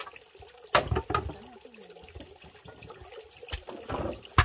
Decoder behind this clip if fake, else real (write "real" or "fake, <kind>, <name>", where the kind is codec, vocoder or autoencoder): real